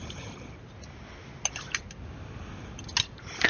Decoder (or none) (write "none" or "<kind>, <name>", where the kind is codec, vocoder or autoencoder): none